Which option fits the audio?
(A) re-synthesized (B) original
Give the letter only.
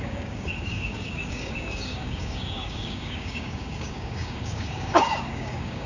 A